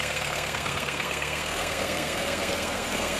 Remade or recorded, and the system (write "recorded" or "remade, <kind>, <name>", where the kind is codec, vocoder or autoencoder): remade, codec, SNAC